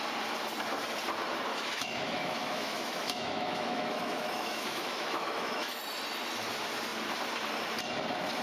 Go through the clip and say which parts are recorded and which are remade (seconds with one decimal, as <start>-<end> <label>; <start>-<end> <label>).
0.0-1.5 recorded; 1.5-5.8 remade; 5.8-8.4 recorded